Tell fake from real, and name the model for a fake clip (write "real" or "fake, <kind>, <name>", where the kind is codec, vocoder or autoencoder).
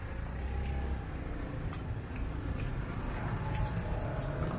real